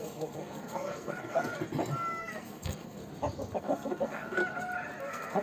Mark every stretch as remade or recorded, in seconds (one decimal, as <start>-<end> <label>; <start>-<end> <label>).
0.0-1.5 remade; 1.5-2.2 recorded; 2.2-3.0 remade; 3.0-3.6 recorded; 3.6-4.4 remade; 4.4-5.0 recorded; 5.0-5.4 remade